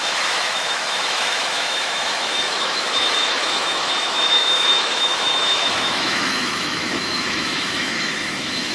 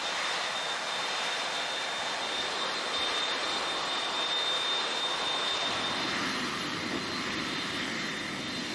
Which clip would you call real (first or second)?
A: second